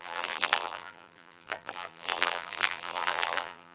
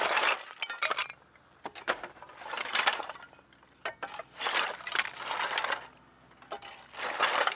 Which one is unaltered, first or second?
second